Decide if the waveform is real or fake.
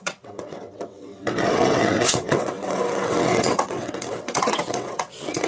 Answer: fake